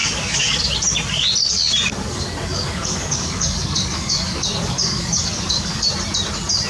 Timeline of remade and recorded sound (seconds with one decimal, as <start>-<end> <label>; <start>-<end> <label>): 0.0-0.6 remade; 0.6-1.9 recorded; 1.9-5.9 remade; 5.9-6.7 recorded